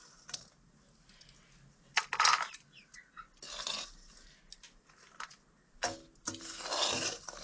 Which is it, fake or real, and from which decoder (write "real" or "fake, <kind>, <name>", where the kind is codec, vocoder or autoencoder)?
real